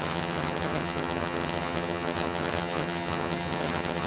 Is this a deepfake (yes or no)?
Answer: yes